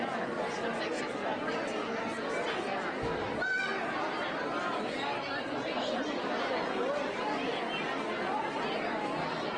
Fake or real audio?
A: real